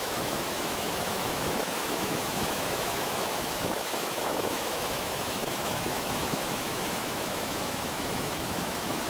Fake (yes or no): yes